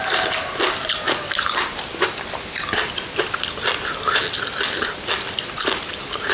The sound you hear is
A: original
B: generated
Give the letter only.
A